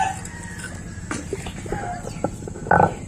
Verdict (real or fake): real